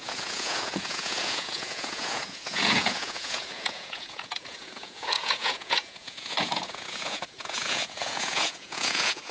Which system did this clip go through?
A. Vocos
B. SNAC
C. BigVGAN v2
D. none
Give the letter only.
A